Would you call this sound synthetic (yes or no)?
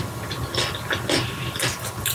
no